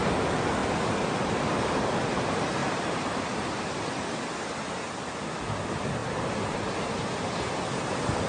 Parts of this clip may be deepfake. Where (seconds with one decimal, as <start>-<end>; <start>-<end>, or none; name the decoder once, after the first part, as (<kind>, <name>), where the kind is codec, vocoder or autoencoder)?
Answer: 0.6-1.8 (vocoder, BigVGAN v2); 2.6-3.8